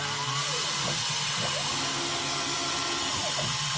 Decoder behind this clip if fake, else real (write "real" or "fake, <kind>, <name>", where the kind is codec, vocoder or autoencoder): real